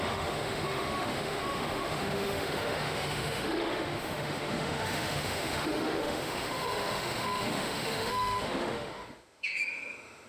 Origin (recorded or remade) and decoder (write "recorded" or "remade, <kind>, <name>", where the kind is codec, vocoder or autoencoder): remade, autoencoder, DAC-VAE